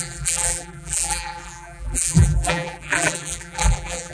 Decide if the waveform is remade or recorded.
remade